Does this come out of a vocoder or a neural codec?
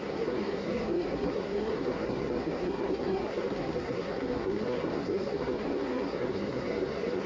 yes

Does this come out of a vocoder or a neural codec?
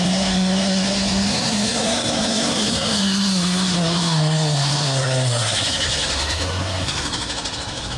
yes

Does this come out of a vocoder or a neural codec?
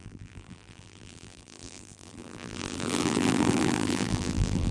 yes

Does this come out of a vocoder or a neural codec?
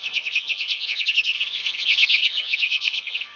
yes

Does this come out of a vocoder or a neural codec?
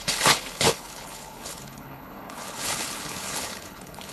yes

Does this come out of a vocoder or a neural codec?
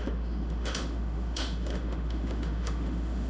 yes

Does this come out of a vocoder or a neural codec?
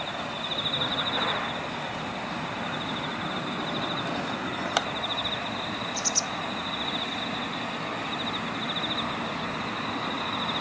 no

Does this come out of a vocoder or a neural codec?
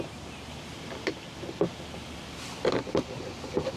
no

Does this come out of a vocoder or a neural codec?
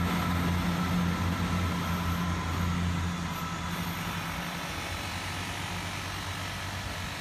no